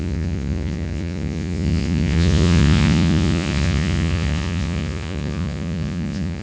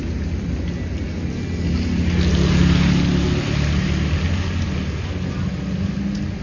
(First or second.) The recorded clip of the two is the second